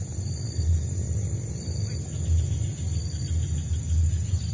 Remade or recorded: recorded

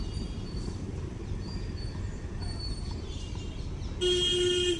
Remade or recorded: recorded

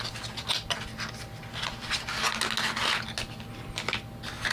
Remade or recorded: recorded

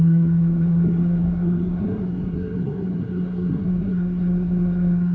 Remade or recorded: remade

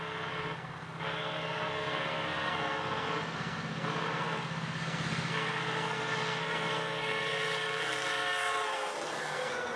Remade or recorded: remade